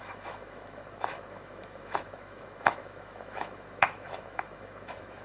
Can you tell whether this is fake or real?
fake